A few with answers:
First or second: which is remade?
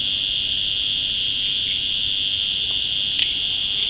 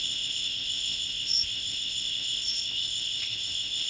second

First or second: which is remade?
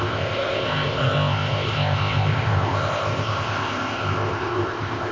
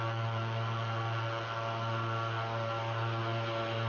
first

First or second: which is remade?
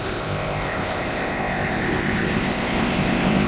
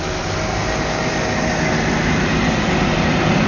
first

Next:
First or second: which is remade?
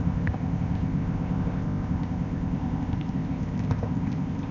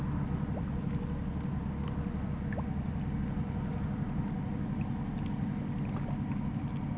first